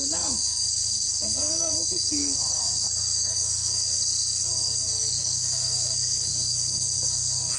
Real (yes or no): no